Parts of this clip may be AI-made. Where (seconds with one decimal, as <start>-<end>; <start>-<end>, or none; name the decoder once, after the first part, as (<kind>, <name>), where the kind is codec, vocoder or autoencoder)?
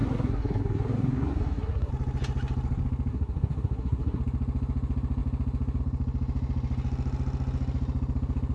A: 0.0-1.9 (codec, SNAC); 3.1-4.2